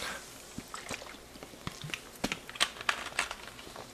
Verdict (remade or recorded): recorded